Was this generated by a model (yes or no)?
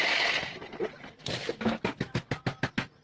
no